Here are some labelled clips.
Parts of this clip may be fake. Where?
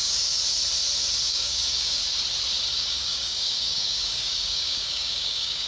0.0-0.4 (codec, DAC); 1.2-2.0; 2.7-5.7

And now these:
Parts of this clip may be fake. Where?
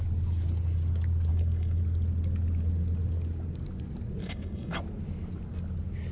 1.3-1.8 (codec, DAC); 4.2-4.8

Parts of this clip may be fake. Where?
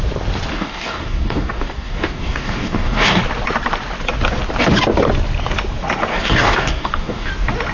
0.5-3.2 (codec, DAC); 6.1-7.3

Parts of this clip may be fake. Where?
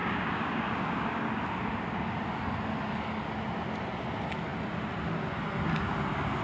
0.0-1.3 (codec, DAC)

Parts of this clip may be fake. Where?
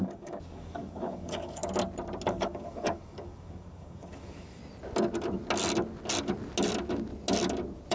0.0-1.6 (codec, DAC); 2.3-4.6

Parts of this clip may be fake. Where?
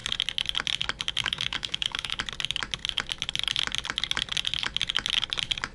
1.2-2.2 (codec, DAC)